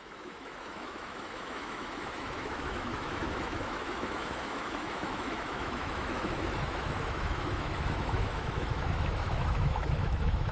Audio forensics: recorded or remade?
remade